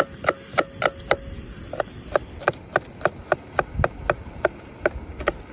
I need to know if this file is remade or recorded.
recorded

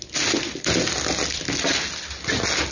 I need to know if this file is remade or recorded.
recorded